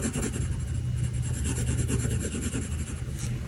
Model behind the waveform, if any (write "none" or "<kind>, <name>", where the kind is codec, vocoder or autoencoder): none